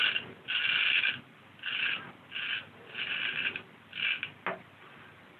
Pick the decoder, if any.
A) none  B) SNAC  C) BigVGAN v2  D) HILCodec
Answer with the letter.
A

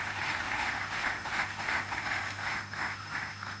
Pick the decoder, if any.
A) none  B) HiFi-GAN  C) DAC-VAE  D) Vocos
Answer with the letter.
C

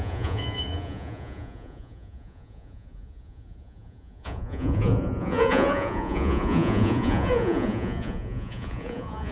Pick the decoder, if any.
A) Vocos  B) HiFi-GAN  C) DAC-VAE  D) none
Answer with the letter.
A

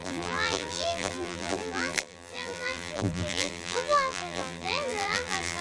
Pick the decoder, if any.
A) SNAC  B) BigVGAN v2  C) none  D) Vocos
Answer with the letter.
B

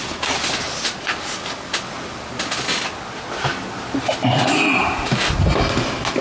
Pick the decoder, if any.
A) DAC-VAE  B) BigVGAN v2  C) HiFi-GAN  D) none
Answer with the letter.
D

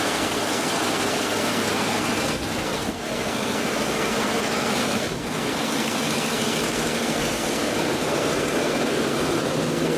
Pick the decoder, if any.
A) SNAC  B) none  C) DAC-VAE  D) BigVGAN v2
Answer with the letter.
A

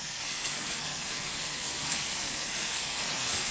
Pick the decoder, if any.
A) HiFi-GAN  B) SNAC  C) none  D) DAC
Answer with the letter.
B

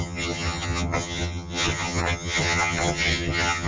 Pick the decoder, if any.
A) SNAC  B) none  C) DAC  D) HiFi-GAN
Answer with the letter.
D